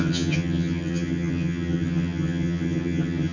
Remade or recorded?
remade